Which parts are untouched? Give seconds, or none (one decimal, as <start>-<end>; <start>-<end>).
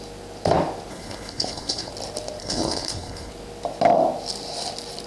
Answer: 0.0-0.9; 1.9-2.4; 3.3-5.1